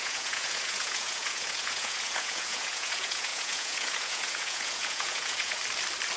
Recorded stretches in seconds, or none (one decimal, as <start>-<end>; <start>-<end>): 5.6-6.2